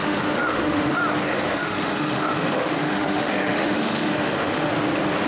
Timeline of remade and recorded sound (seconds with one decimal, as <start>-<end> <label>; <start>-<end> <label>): 0.0-1.0 remade; 1.0-1.5 recorded; 1.5-4.7 remade; 4.7-5.3 recorded